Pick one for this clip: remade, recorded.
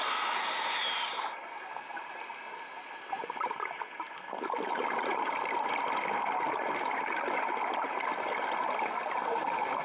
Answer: recorded